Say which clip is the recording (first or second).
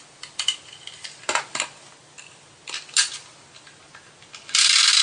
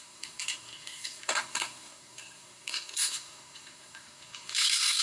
first